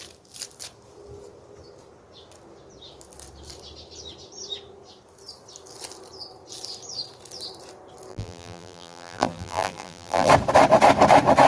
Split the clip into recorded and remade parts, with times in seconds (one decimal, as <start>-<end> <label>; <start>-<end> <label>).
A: 0.0-8.1 recorded; 8.1-10.3 remade; 10.3-11.5 recorded